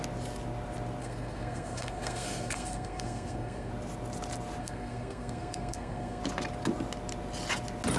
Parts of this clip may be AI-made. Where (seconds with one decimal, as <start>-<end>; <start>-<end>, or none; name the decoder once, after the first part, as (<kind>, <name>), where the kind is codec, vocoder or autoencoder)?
1.0-3.7 (codec, SNAC); 4.6-6.2